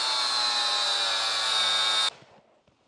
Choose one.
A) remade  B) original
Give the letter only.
B